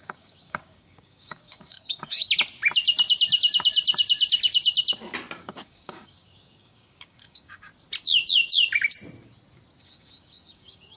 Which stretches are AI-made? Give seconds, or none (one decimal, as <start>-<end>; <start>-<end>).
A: 0.0-2.2; 5.4-7.7; 9.8-11.0